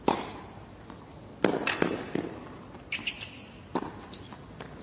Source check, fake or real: real